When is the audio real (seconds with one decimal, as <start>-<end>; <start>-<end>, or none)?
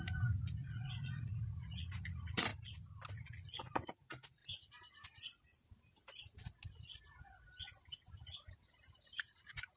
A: 2.5-3.1; 4.4-9.2